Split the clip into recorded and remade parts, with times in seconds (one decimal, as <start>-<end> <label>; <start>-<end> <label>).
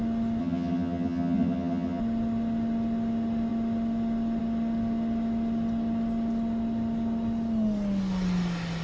0.0-0.4 recorded; 0.4-2.0 remade; 2.0-8.8 recorded